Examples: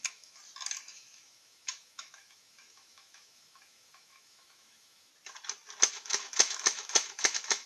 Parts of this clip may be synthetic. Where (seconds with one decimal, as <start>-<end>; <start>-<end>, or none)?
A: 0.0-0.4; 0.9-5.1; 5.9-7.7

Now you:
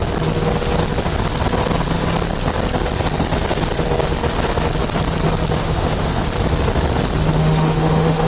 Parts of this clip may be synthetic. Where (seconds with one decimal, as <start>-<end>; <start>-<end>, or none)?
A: 5.6-6.2; 7.4-8.3

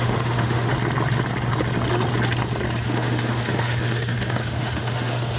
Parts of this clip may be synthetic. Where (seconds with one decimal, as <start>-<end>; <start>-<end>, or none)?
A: 0.0-0.7; 2.8-5.4